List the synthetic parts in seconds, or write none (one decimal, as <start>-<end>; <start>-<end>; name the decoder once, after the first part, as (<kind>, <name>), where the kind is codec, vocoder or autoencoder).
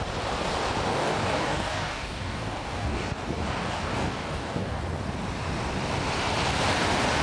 0.9-4.8 (codec, DAC)